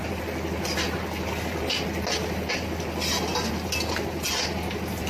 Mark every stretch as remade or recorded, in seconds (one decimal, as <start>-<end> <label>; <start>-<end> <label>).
0.0-5.1 recorded